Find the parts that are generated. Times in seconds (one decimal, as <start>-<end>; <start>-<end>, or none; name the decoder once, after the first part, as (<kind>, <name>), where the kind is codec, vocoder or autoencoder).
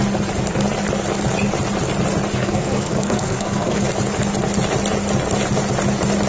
2.4-3.8 (codec, SNAC)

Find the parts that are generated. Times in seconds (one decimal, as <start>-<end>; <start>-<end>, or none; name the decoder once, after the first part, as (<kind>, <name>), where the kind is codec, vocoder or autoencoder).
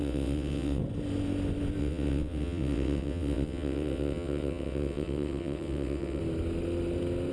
0.0-0.8 (vocoder, WaveNeXt); 1.8-6.2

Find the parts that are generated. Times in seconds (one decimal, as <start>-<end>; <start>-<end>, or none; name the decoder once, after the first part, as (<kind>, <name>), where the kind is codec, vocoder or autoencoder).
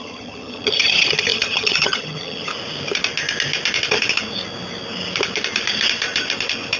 0.0-2.5 (vocoder, HiFi-GAN)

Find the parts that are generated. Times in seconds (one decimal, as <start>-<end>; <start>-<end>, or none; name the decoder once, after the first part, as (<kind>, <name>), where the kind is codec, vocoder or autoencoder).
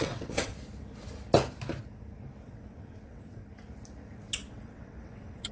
0.0-0.5 (vocoder, WaveNeXt); 2.4-3.4; 4.5-5.5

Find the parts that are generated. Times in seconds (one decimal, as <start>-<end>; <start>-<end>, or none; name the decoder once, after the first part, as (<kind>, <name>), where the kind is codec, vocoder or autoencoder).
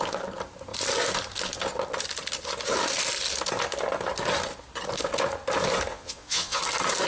5.9-6.6 (vocoder, Vocos)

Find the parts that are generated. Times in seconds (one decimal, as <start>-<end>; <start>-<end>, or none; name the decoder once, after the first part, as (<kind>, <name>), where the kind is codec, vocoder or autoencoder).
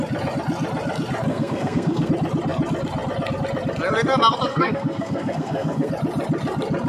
1.3-2.1 (codec, SNAC); 4.5-5.9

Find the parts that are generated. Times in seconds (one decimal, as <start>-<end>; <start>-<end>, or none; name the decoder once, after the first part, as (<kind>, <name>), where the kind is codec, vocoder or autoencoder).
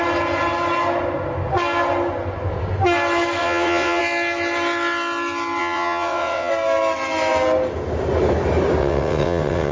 3.4-4.0 (vocoder, WaveNeXt); 5.6-6.5; 8.8-9.7